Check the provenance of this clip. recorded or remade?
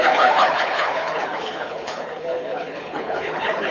remade